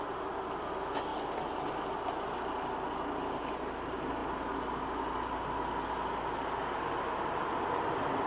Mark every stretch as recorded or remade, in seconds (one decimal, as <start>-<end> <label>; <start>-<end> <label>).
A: 0.0-8.3 recorded